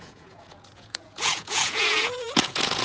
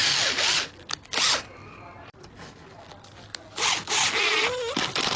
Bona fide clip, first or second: second